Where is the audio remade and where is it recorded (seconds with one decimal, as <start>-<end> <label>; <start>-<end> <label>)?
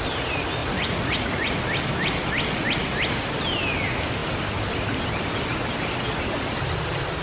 0.0-0.6 recorded; 0.6-1.6 remade; 1.6-7.2 recorded